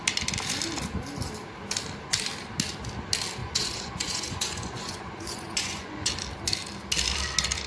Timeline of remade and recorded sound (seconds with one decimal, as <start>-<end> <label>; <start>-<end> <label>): 0.0-3.4 recorded; 3.4-6.1 remade; 6.1-7.7 recorded